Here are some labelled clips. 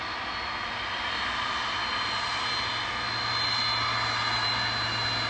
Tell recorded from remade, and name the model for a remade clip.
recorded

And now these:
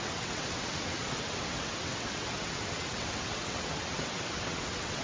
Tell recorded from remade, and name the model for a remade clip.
remade, vocoder, WaveNeXt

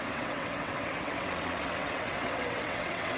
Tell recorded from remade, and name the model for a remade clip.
remade, vocoder, WaveNeXt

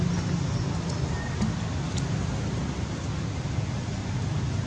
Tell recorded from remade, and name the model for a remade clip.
recorded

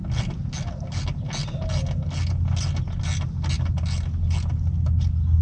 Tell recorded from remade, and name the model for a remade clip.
recorded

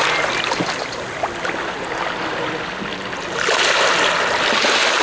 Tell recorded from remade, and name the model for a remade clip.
recorded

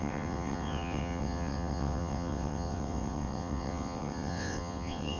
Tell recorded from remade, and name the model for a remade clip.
remade, vocoder, WaveNeXt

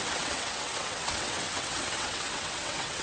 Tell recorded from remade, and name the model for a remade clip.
remade, vocoder, WaveNeXt